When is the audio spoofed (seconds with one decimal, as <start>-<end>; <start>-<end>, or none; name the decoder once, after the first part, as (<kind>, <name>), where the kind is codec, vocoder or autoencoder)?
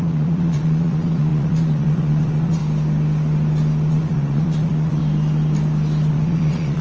0.0-2.6 (vocoder, Vocos); 3.9-5.0; 6.1-6.8